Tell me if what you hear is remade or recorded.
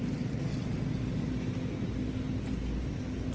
recorded